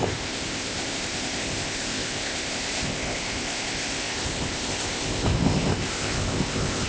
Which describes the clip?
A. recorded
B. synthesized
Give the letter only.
B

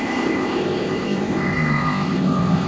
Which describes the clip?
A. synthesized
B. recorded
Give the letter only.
A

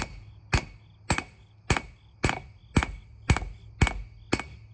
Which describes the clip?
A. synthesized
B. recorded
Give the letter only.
B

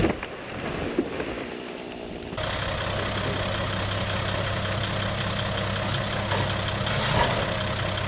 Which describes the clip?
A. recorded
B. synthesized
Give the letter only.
A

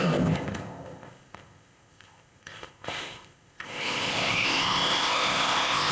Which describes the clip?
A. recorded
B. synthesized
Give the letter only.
B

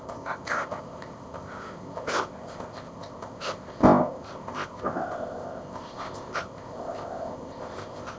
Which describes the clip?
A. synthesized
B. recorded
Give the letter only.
A